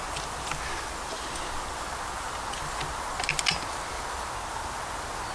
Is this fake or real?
real